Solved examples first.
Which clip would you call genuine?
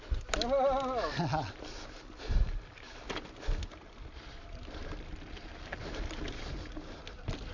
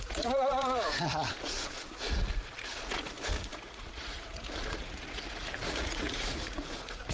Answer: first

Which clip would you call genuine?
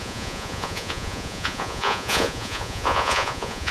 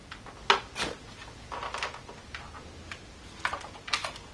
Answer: second